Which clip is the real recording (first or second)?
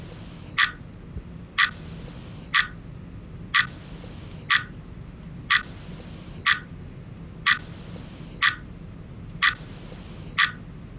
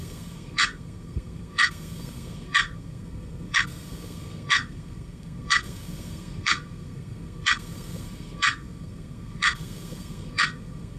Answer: first